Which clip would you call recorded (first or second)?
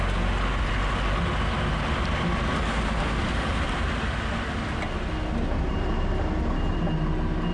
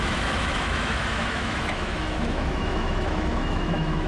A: first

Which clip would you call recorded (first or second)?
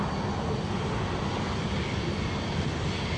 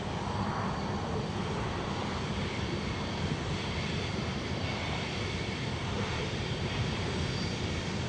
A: first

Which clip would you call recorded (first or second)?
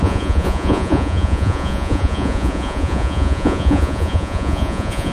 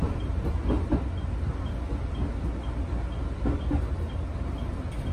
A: second